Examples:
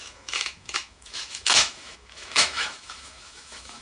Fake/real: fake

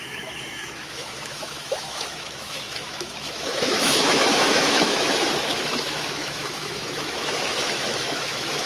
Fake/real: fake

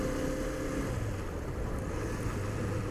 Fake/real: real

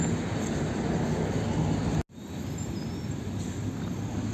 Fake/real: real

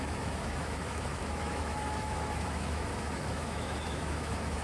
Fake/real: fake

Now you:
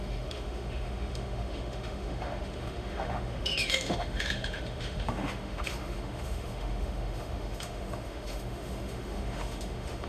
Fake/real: fake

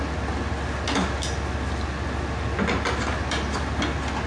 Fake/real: real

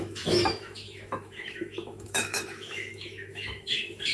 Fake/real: fake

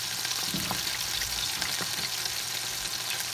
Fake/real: real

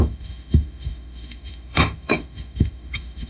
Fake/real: fake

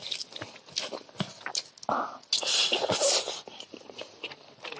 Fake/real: real